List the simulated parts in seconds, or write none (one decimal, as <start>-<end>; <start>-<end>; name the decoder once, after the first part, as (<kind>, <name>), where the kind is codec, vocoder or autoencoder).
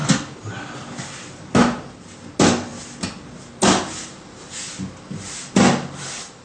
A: none